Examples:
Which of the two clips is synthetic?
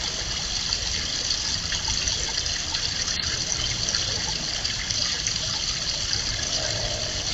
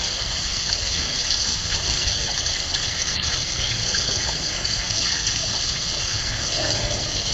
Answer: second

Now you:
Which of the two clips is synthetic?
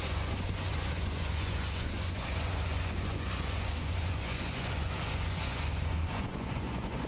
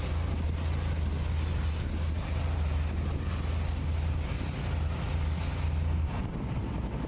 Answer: first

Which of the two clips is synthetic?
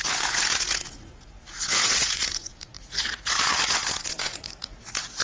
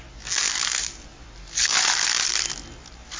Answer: first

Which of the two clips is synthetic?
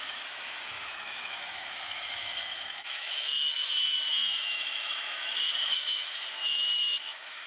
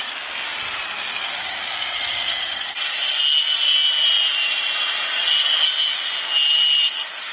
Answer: first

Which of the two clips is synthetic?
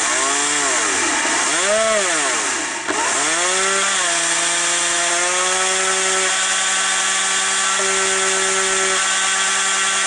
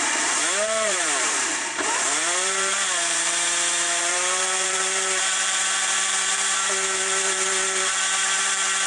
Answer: second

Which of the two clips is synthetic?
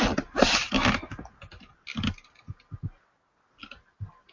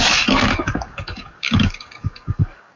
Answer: second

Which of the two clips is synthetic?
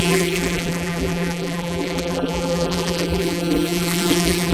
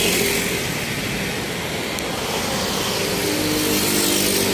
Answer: first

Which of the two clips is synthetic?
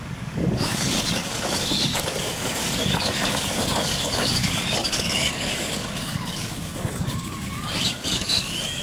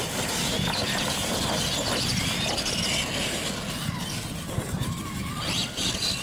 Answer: first